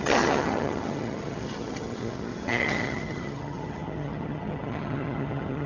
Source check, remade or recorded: remade